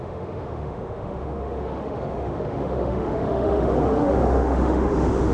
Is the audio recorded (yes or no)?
no